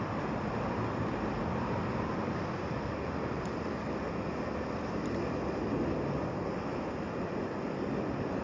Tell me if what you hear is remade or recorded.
recorded